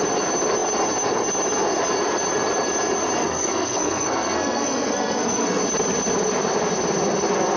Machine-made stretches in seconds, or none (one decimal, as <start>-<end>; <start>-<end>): 3.2-5.6